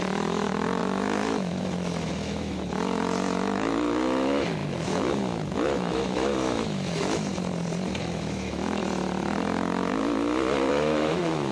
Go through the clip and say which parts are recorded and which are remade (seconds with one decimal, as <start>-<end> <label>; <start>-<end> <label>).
0.0-7.3 remade; 7.3-8.0 recorded; 8.0-8.8 remade; 8.8-10.7 recorded; 10.7-11.5 remade

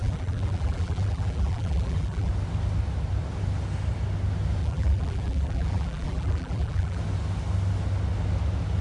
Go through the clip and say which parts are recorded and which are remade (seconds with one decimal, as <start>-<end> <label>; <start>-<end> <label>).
0.0-2.3 remade; 2.3-4.6 recorded; 4.6-7.0 remade; 7.0-8.8 recorded

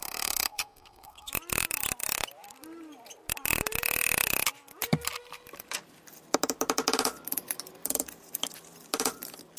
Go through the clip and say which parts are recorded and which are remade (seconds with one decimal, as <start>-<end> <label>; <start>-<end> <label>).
0.0-1.3 remade; 1.3-9.6 recorded

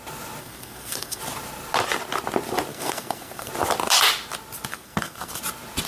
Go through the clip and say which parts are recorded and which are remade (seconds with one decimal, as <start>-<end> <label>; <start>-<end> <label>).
0.0-0.4 recorded; 0.4-1.2 remade; 1.2-2.7 recorded; 2.7-3.5 remade; 3.5-4.7 recorded; 4.7-5.4 remade; 5.4-5.9 recorded

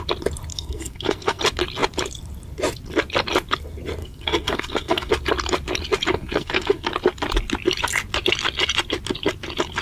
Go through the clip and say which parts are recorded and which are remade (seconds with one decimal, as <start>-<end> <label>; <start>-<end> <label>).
0.0-0.5 recorded; 0.5-1.4 remade; 1.4-4.0 recorded; 4.0-5.1 remade; 5.1-6.1 recorded; 6.1-6.9 remade; 6.9-9.8 recorded